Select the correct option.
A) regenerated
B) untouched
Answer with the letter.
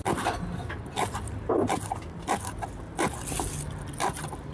B